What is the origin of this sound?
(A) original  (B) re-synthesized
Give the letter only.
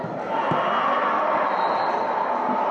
A